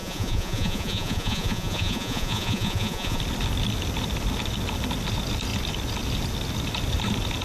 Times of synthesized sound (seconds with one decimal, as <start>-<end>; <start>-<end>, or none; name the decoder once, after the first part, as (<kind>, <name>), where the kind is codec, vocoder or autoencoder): 0.0-3.2 (vocoder, Vocos)